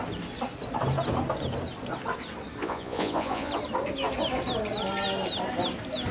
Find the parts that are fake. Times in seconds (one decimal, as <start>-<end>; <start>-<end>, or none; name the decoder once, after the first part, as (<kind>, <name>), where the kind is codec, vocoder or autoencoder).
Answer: 2.6-3.5 (vocoder, Vocos)